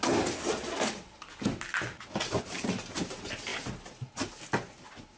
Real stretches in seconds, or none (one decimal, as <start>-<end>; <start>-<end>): 0.0-5.2